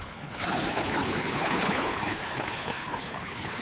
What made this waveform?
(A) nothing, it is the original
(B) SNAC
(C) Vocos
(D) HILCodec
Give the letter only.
D